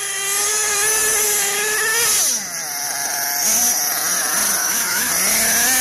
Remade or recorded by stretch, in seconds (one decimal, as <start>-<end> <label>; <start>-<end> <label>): 0.0-4.6 recorded; 4.6-5.1 remade; 5.1-5.8 recorded

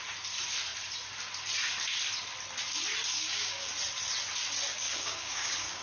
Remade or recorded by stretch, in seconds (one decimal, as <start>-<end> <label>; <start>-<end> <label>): 0.0-3.1 recorded; 3.1-3.7 remade; 3.7-4.7 recorded; 4.7-5.8 remade